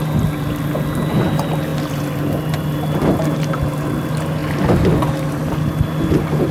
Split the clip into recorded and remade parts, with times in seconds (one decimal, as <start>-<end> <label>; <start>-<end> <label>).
0.0-6.5 recorded